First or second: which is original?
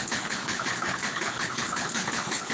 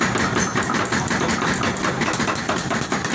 second